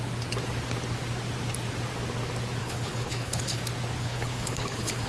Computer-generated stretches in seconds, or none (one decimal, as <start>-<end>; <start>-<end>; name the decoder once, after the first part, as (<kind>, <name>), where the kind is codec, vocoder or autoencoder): 2.6-3.6 (codec, HILCodec); 4.0-5.1